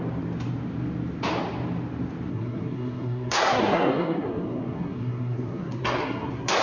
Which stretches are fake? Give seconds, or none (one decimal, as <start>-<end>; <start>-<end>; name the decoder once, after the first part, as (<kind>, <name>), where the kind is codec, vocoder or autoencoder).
2.3-6.6 (codec, SNAC)